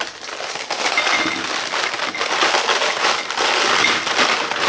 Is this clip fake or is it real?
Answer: real